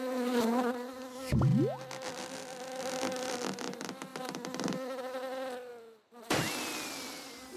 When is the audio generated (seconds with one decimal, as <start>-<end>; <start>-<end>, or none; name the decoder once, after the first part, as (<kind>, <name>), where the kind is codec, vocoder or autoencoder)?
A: none